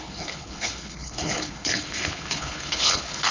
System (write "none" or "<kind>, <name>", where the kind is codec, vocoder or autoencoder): codec, HILCodec